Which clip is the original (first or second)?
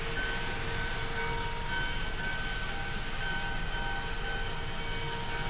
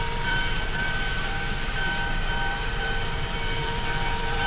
first